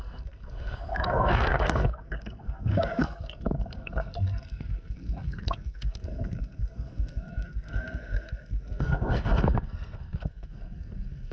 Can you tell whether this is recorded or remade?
remade